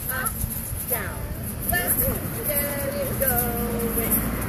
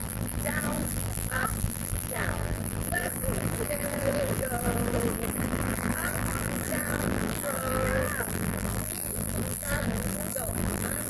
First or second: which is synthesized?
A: second